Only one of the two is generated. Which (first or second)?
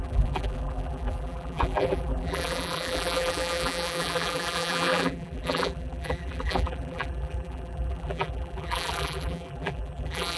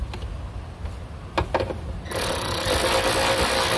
first